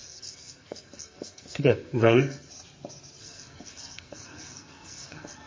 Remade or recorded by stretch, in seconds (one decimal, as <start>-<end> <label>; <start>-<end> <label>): 0.0-2.5 remade; 2.5-3.2 recorded; 3.2-5.5 remade